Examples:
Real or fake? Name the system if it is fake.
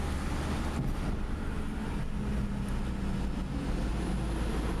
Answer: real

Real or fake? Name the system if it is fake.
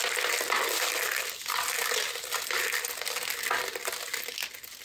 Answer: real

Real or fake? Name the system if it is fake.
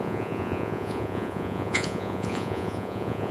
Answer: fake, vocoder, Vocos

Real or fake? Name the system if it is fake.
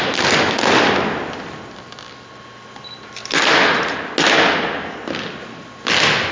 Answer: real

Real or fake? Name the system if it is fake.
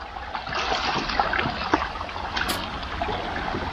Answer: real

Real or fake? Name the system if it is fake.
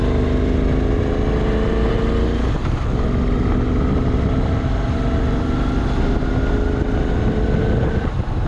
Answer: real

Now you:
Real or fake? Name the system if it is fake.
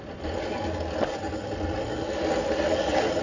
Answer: real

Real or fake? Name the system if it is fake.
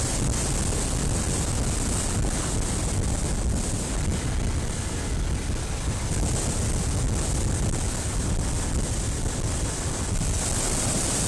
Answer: real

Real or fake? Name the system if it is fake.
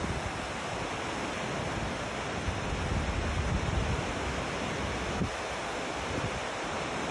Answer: real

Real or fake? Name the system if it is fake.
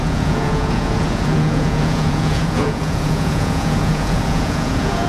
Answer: fake, vocoder, Vocos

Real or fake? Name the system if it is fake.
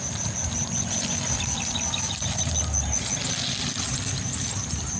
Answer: real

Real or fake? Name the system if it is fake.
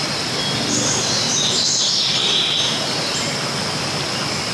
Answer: real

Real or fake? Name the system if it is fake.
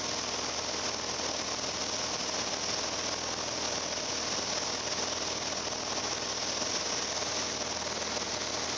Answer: real